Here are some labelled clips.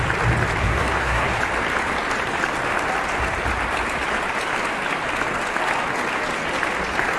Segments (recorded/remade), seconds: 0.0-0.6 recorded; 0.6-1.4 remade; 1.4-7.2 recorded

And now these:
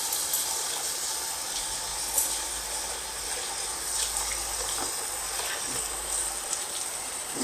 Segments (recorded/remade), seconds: 0.0-7.4 recorded

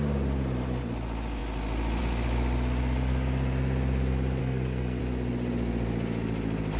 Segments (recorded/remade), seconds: 0.0-4.4 recorded; 4.4-5.0 remade; 5.0-6.8 recorded

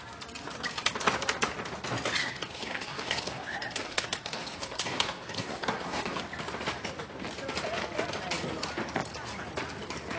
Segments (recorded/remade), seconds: 0.0-2.2 recorded; 2.2-6.2 remade; 6.2-10.2 recorded

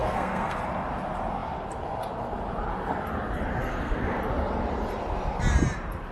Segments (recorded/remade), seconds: 0.0-0.6 remade; 0.6-3.7 recorded; 3.7-4.2 remade; 4.2-6.1 recorded

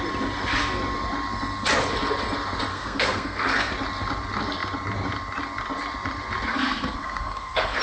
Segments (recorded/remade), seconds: 0.0-2.7 recorded; 2.7-3.7 remade; 3.7-6.5 recorded; 6.5-7.8 remade

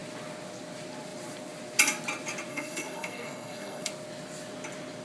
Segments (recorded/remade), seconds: 0.0-2.5 recorded; 2.5-3.9 remade; 3.9-5.0 recorded